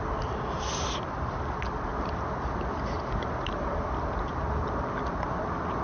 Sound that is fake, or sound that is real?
real